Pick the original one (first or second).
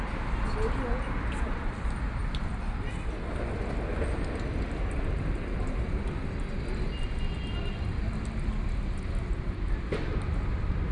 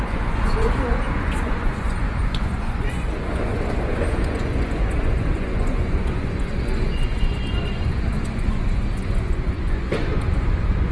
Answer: first